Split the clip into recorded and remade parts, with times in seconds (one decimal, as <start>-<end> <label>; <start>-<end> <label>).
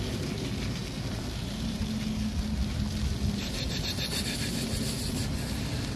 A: 0.0-6.0 recorded